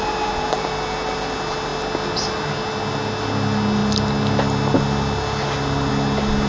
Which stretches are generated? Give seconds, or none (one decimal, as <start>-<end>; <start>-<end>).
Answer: none